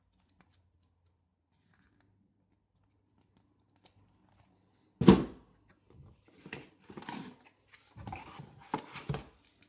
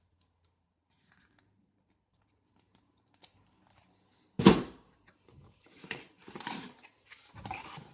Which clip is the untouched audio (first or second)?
first